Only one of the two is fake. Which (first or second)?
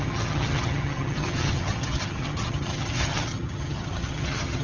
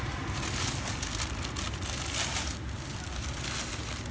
first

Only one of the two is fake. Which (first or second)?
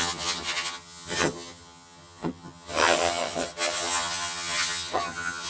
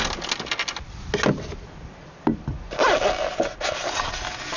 first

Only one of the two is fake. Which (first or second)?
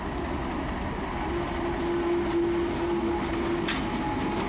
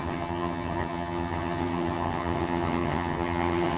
second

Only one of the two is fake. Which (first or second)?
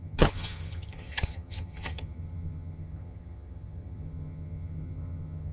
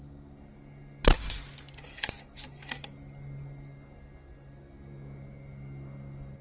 first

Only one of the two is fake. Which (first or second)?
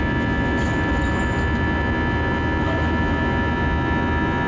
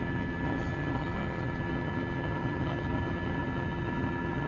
second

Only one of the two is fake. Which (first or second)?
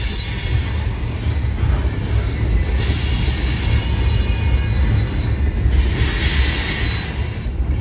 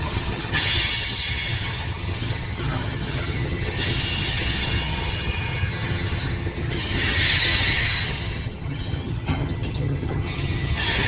second